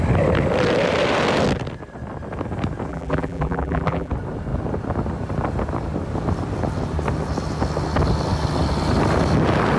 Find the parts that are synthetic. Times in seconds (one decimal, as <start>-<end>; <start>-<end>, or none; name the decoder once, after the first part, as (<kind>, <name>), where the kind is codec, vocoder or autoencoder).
2.9-4.1 (vocoder, BigVGAN v2)